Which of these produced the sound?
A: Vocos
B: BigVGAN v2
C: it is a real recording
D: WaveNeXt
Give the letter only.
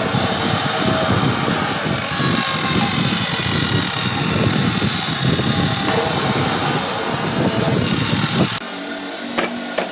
C